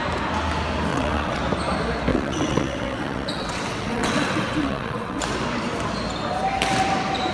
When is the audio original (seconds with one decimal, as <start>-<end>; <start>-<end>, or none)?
0.0-0.9; 1.4-2.1; 5.2-7.3